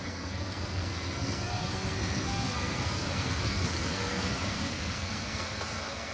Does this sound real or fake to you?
fake